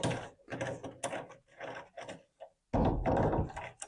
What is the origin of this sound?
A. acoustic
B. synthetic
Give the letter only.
A